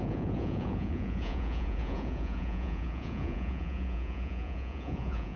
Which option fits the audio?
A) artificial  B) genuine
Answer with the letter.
A